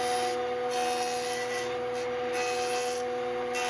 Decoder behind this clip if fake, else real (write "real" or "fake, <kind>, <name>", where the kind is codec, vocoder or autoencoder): real